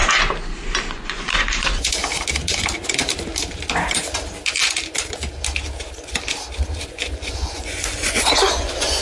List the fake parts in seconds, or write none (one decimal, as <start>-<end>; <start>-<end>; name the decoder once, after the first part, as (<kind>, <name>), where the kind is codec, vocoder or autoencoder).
0.9-2.0 (vocoder, Vocos); 6.9-9.0